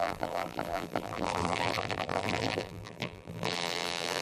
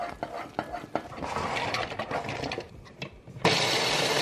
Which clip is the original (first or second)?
second